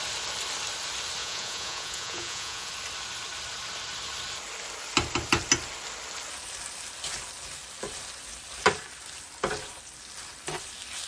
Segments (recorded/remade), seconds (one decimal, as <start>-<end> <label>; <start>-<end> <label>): 0.0-1.2 recorded; 1.2-2.7 remade; 2.7-11.1 recorded